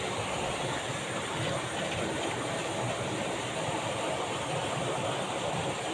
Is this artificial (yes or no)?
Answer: yes